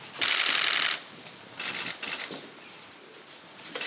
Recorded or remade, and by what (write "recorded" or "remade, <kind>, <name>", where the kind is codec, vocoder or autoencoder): recorded